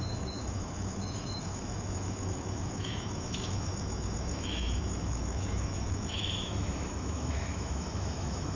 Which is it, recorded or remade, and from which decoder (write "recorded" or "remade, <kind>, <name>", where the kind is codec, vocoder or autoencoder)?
remade, autoencoder, DAC-VAE